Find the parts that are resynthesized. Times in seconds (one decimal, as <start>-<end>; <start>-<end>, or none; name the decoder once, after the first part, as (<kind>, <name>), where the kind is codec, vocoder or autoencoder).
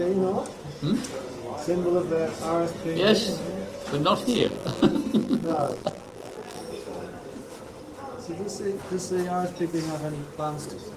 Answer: 4.3-4.8 (vocoder, BigVGAN v2); 5.2-6.6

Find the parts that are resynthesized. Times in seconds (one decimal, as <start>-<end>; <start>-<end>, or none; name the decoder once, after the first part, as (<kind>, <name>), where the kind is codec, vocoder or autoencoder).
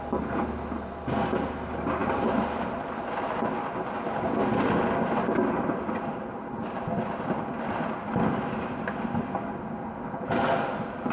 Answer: none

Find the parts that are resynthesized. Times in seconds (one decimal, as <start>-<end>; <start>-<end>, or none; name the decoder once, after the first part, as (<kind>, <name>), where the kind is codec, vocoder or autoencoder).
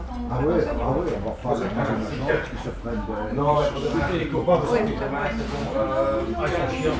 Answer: 1.4-4.8 (vocoder, BigVGAN v2); 6.2-7.0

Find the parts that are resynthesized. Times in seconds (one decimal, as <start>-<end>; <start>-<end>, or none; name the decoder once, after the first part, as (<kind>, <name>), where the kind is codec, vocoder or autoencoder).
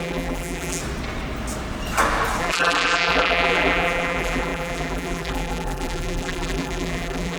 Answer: 0.0-0.8 (vocoder, BigVGAN v2); 2.4-7.4